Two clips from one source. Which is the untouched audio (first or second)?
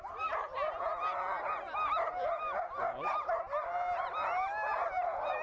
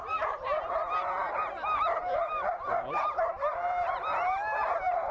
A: first